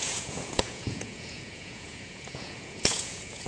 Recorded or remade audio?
remade